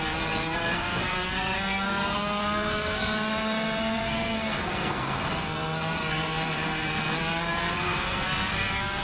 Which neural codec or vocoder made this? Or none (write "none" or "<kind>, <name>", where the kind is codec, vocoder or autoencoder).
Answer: codec, SNAC